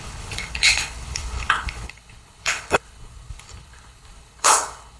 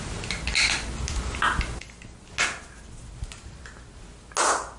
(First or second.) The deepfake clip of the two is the first